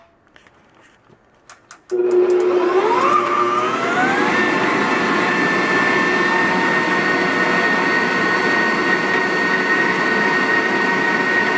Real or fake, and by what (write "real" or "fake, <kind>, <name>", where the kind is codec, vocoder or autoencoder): real